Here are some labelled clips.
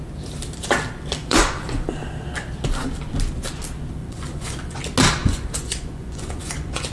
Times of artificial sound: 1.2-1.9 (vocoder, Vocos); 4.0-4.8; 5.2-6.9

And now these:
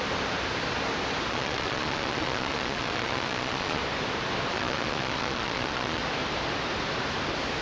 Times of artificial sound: 1.3-3.8 (vocoder, Vocos); 4.5-6.0

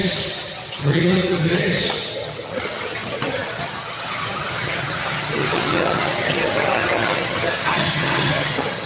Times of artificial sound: 0.0-8.9 (vocoder, HiFi-GAN)